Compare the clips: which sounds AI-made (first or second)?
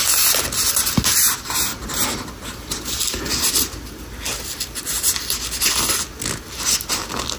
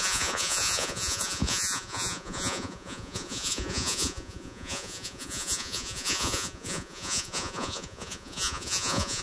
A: second